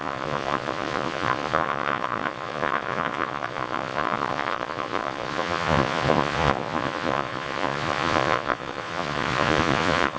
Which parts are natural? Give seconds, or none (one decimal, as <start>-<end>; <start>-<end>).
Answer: none